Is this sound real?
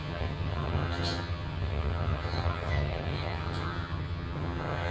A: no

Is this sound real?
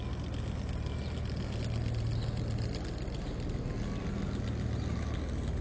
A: yes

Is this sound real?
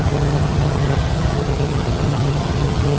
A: no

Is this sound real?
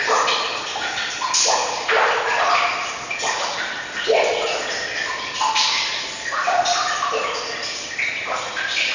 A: yes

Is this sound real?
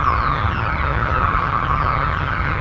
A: no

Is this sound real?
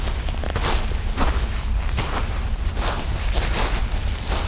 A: yes